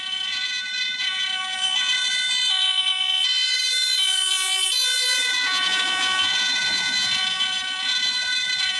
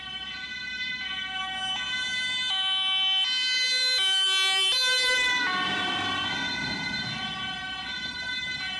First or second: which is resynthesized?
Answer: first